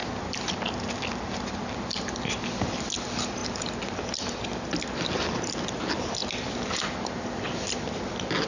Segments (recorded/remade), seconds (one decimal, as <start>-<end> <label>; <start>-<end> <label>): 0.0-8.5 recorded